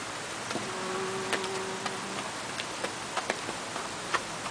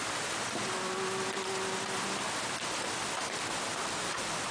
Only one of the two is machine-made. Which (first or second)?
second